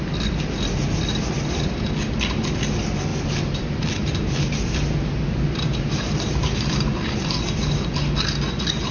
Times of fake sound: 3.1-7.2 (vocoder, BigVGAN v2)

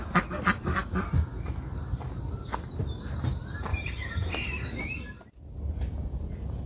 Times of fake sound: 2.4-3.2 (vocoder, BigVGAN v2); 3.7-4.8

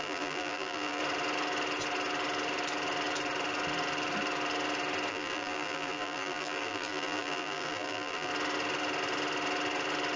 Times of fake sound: 0.0-1.0 (vocoder, BigVGAN v2); 5.1-8.3

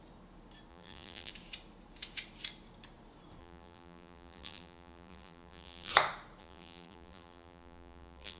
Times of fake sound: 0.7-1.3 (vocoder, BigVGAN v2); 3.4-5.9; 6.4-8.4

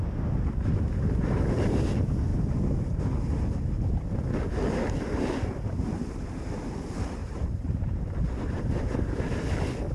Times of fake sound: 2.3-3.0 (vocoder, BigVGAN v2); 7.2-9.2